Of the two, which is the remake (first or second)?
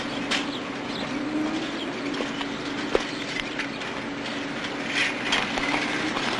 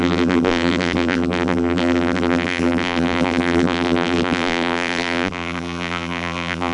second